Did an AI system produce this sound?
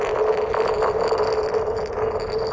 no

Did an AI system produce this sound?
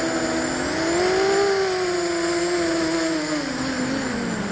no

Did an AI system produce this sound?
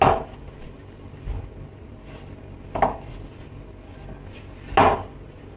no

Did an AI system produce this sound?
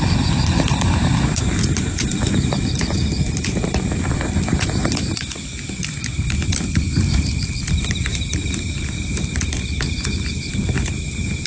yes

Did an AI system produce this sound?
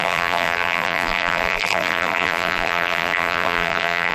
yes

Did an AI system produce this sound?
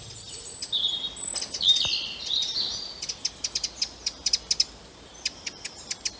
no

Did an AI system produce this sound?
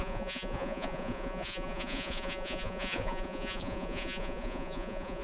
yes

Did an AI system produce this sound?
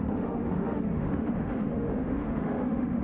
yes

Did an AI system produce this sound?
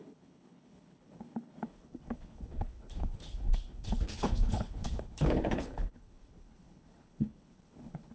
yes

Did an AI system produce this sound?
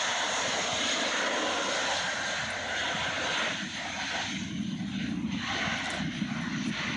no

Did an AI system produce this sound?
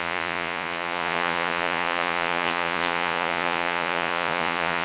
yes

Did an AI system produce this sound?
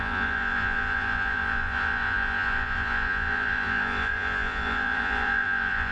yes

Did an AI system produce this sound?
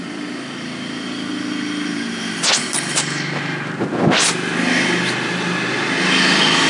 no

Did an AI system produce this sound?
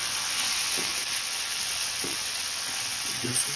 yes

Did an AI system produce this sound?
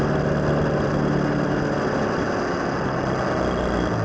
no